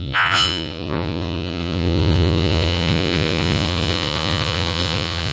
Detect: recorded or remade remade